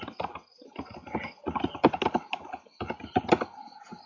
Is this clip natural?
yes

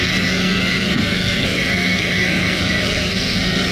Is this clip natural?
no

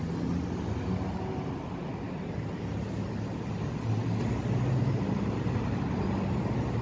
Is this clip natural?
yes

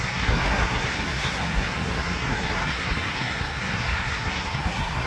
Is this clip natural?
no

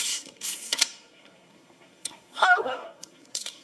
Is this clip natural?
no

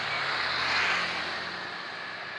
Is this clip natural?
yes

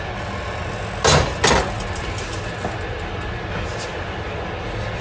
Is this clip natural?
yes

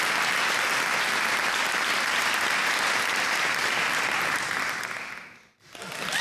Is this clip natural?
yes